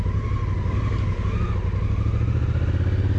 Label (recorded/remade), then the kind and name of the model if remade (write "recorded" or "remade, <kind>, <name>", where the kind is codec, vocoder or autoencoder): recorded